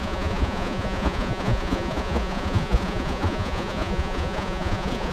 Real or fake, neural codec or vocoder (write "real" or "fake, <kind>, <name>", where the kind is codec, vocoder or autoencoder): fake, vocoder, Vocos